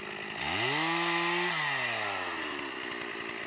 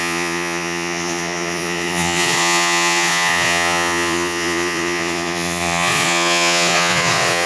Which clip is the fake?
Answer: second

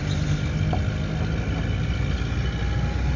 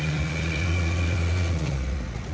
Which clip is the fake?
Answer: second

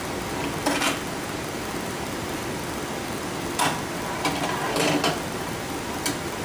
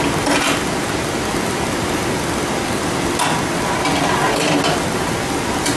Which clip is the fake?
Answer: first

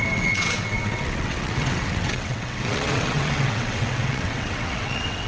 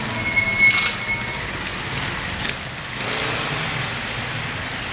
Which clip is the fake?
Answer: first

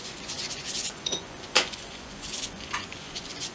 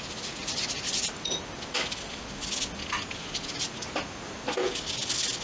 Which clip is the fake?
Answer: first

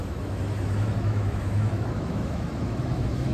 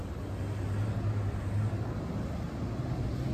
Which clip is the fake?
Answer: first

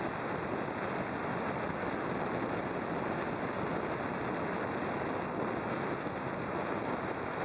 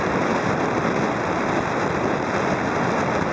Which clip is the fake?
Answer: second